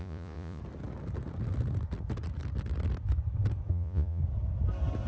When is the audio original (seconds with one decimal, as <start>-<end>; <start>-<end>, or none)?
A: 0.6-3.7; 4.2-5.1